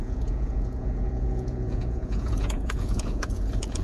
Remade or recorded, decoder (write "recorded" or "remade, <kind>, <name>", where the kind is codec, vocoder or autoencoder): remade, vocoder, Vocos